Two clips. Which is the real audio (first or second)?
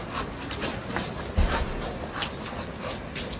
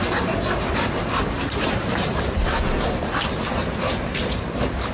first